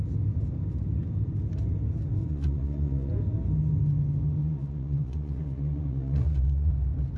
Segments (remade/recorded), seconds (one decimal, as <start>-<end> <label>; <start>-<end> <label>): 0.0-2.2 recorded; 2.2-3.1 remade; 3.1-4.4 recorded; 4.4-6.7 remade; 6.7-7.2 recorded